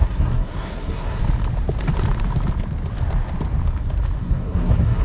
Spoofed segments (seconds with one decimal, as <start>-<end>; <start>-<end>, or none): 0.0-1.2; 4.2-5.0